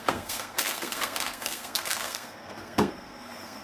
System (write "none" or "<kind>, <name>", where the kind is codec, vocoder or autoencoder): codec, SNAC